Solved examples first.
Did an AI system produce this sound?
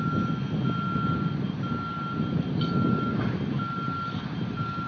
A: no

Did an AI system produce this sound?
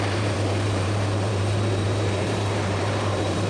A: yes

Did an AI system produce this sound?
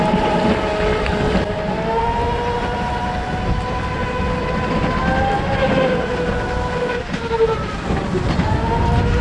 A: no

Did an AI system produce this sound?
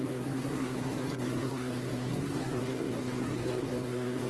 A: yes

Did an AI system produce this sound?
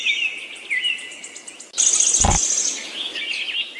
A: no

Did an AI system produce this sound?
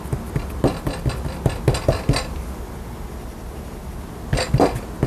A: no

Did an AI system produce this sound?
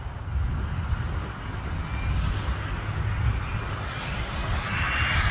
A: no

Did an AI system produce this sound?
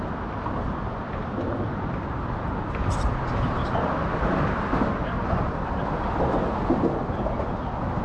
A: no